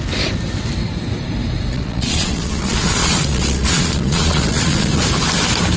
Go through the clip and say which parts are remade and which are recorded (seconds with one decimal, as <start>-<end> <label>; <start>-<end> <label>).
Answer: 0.0-1.7 recorded; 1.7-5.0 remade; 5.0-5.8 recorded